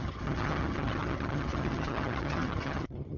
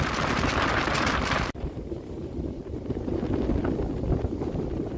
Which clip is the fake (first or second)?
first